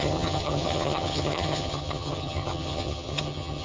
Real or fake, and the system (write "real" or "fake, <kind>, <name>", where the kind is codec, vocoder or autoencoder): fake, vocoder, HiFi-GAN